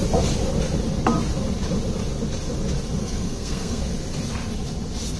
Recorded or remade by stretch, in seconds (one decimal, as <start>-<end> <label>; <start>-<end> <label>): 0.0-3.0 recorded; 3.0-3.8 remade; 3.8-5.2 recorded